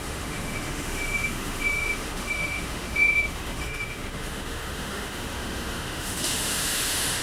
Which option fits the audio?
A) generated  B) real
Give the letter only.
A